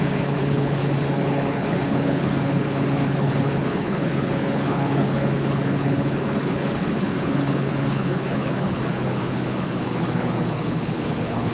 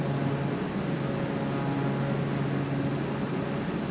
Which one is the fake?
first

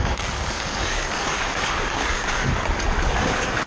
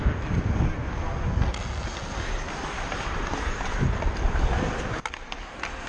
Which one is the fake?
first